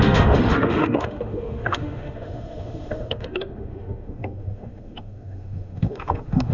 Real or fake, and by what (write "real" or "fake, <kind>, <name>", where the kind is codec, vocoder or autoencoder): fake, autoencoder, DAC-VAE